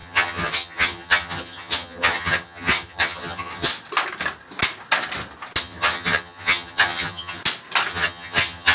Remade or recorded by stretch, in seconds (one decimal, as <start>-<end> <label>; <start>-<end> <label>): 0.0-3.7 remade; 3.7-5.6 recorded; 5.6-7.4 remade; 7.4-7.9 recorded; 7.9-8.7 remade